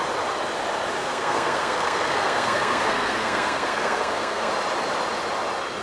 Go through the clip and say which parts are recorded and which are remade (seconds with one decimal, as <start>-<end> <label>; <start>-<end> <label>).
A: 0.0-1.0 recorded; 1.0-4.5 remade; 4.5-5.8 recorded